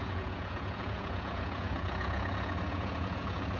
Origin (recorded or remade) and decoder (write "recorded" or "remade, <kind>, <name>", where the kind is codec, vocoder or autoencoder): remade, vocoder, Vocos